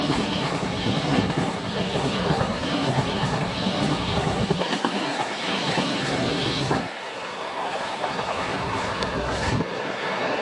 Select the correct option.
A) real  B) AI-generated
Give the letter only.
B